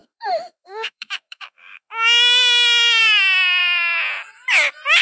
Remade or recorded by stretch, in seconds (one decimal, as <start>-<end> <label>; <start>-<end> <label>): 0.0-3.0 remade; 3.0-5.0 recorded